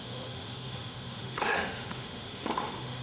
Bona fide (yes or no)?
no